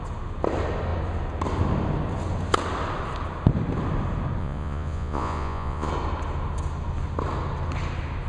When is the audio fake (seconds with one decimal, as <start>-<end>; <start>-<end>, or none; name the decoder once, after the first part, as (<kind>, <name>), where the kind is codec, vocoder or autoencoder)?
4.4-5.9 (vocoder, Vocos)